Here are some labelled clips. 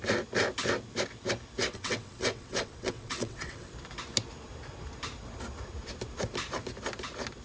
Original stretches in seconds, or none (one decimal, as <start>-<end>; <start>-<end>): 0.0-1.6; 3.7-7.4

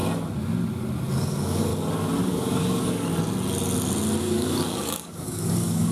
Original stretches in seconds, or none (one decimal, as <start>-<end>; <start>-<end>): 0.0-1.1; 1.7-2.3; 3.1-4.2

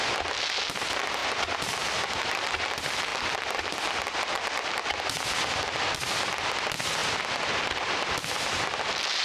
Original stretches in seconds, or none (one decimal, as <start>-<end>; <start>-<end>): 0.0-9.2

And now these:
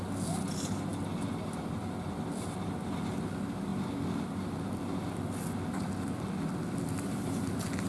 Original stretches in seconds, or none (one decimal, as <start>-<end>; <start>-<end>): 0.0-7.9

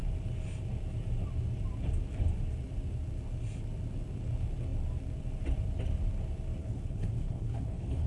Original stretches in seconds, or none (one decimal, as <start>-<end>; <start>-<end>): 0.0-6.6

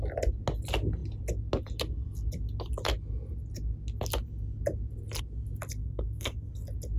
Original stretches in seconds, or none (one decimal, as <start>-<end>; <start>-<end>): 0.0-5.8; 6.5-7.0

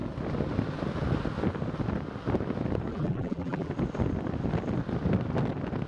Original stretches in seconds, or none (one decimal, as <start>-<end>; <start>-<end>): 0.0-2.9; 3.7-5.9

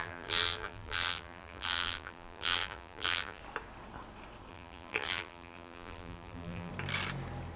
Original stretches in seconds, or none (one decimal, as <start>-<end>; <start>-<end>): 3.4-4.5; 6.7-7.6